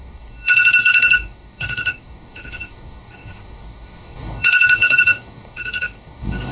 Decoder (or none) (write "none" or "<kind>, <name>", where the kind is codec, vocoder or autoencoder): codec, DAC